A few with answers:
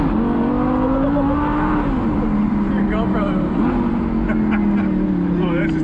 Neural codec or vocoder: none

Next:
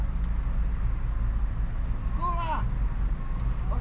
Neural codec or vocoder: none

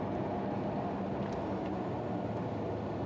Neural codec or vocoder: none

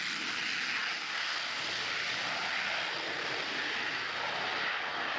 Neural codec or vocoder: none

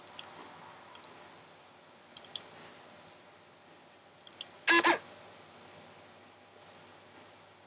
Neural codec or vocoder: none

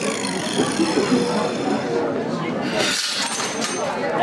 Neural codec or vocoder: none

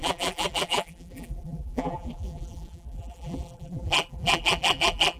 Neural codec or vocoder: vocoder, BigVGAN v2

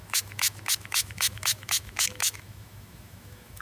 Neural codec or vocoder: autoencoder, DAC-VAE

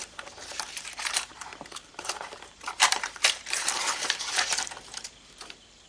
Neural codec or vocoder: vocoder, BigVGAN v2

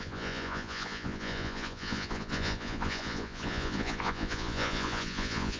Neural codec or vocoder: vocoder, Vocos